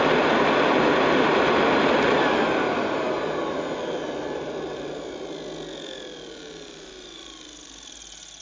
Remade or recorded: recorded